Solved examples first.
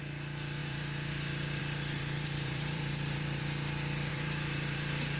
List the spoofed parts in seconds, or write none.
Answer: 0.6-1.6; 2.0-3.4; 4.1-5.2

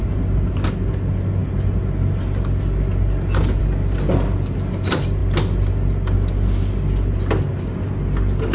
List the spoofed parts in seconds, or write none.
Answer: none

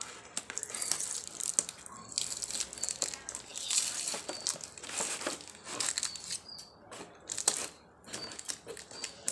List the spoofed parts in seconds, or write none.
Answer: none

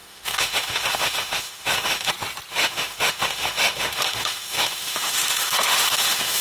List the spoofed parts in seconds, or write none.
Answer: 0.0-2.1; 2.5-6.4

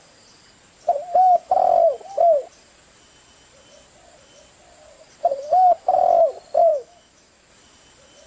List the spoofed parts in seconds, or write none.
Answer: 6.7-7.5

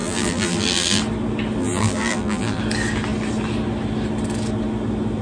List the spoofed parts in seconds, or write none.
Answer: 0.0-1.0; 1.6-2.6

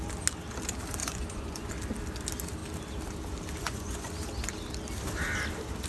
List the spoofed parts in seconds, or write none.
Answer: 1.0-1.7; 3.6-4.1

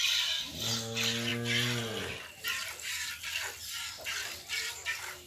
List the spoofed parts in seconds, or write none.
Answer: none